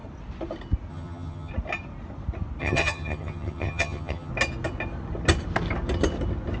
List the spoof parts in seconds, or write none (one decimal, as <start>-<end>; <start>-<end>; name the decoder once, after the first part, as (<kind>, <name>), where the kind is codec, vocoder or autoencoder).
0.9-1.5 (vocoder, HiFi-GAN); 2.6-4.3

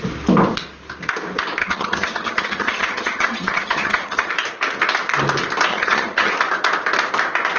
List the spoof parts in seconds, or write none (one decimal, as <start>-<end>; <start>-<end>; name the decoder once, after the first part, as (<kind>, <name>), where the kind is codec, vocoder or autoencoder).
1.6-4.3 (vocoder, HiFi-GAN); 5.7-6.3

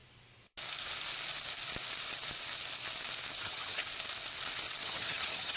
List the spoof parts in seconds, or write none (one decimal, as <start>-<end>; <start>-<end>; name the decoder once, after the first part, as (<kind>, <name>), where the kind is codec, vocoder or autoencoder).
3.4-3.8 (vocoder, HiFi-GAN); 4.8-5.6

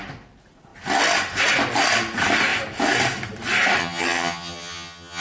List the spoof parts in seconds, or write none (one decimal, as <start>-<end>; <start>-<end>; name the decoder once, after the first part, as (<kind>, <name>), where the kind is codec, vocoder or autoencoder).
3.8-5.2 (vocoder, HiFi-GAN)

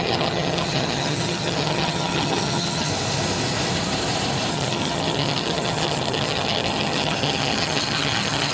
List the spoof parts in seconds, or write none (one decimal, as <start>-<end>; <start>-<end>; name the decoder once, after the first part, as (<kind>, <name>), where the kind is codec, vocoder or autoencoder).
0.0-2.9 (vocoder, HiFi-GAN); 4.5-8.5

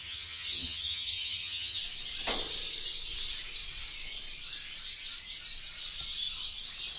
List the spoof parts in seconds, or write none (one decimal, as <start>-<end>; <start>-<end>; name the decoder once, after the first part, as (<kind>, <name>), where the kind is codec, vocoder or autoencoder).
0.0-1.8 (vocoder, HiFi-GAN)

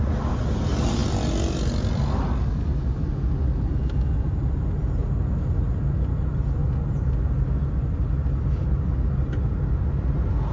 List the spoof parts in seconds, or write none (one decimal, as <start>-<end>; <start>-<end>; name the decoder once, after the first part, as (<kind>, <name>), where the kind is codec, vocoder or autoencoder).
none

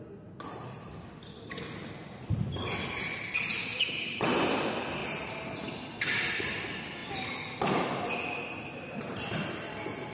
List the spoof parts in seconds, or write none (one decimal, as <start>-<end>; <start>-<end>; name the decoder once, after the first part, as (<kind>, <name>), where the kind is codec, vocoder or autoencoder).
none